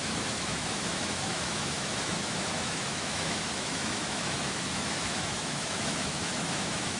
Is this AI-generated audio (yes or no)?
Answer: yes